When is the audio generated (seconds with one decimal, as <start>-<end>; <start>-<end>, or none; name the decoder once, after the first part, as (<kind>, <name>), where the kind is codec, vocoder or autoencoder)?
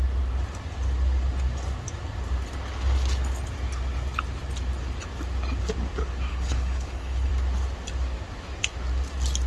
6.3-7.3 (codec, HILCodec)